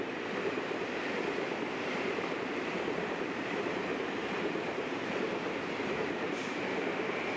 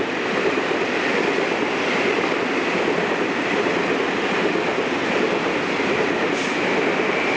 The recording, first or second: second